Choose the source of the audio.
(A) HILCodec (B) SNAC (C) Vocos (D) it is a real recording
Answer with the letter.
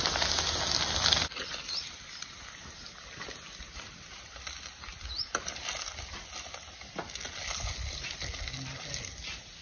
D